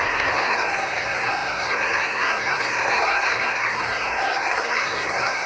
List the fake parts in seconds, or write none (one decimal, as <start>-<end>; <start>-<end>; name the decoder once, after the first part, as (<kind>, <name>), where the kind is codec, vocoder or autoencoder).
0.0-5.5 (codec, SNAC)